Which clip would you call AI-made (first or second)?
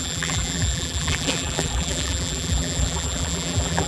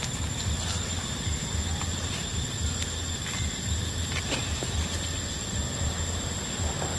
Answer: first